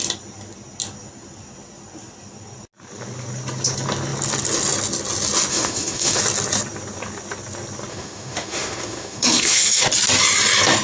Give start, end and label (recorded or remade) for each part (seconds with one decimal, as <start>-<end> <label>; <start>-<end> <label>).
0.0-5.5 recorded; 5.5-6.2 remade; 6.2-7.9 recorded; 7.9-9.8 remade; 9.8-10.8 recorded